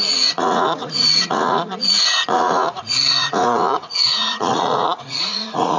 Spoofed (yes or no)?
yes